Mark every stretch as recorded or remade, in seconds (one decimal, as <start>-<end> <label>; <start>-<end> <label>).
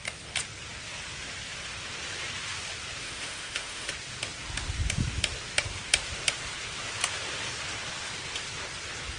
0.0-3.0 recorded; 3.0-3.9 remade; 3.9-9.2 recorded